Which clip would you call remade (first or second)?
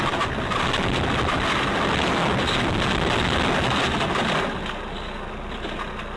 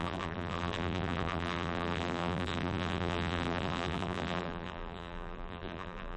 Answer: second